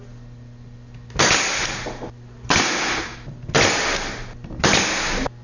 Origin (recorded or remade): recorded